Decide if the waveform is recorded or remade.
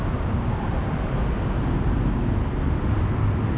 recorded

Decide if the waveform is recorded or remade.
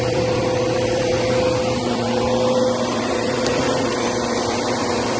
remade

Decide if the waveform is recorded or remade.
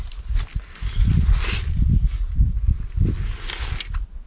recorded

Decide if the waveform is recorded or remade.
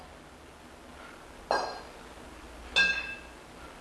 recorded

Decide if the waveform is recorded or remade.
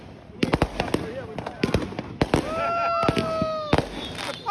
recorded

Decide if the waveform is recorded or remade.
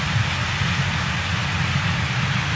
recorded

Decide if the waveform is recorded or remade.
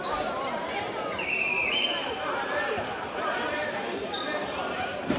remade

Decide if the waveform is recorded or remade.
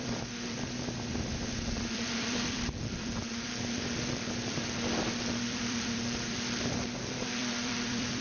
remade